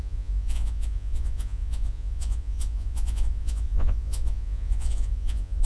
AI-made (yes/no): yes